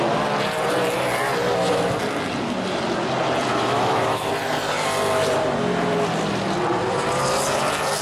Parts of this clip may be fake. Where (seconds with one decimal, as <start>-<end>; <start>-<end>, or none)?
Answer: 3.5-4.3